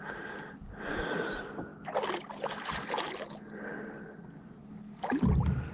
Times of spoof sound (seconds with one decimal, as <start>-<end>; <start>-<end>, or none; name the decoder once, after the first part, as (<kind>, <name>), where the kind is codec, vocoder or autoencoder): none